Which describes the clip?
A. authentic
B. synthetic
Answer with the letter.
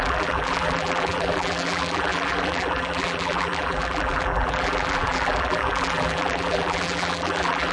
B